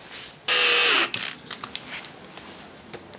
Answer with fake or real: real